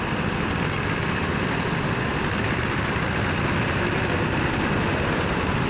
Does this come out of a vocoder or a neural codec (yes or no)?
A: no